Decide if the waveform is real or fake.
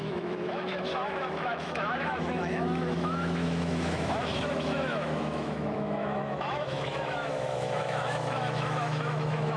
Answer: fake